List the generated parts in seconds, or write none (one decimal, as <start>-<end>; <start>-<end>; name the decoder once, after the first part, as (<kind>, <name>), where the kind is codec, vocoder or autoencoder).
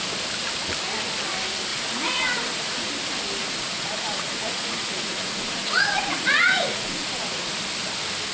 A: 1.7-2.9 (vocoder, Vocos); 3.4-7.5